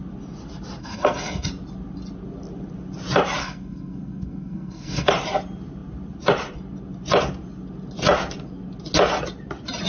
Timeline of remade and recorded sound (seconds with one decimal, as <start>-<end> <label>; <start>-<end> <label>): 0.0-0.8 recorded; 0.8-1.5 remade; 1.5-3.4 recorded; 3.4-5.1 remade; 5.1-9.9 recorded